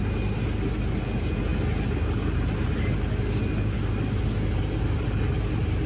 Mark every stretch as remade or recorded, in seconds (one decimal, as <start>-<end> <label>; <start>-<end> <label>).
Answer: 0.0-5.9 recorded

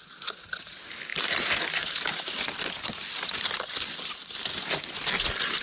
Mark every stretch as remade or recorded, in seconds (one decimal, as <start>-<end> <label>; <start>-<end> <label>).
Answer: 0.0-5.6 recorded

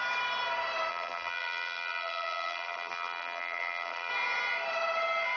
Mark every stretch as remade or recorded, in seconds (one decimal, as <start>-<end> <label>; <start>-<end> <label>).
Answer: 0.0-0.9 recorded; 0.9-4.1 remade; 4.1-5.4 recorded

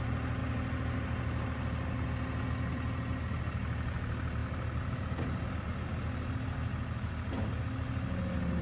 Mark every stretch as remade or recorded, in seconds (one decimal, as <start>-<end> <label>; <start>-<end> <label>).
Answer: 0.0-8.6 recorded

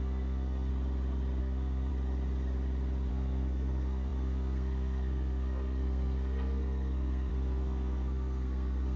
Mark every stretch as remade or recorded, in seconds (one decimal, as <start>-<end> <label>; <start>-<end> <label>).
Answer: 0.0-0.7 remade; 0.7-1.4 recorded; 1.4-1.9 remade; 1.9-3.1 recorded; 3.1-9.0 remade

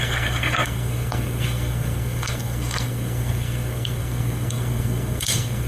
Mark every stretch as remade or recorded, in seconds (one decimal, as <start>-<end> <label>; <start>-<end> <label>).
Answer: 0.0-5.7 remade

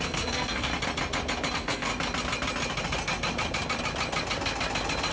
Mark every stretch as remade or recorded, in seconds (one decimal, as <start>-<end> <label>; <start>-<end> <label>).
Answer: 0.0-0.7 remade; 0.7-1.5 recorded; 1.5-1.9 remade; 1.9-5.1 recorded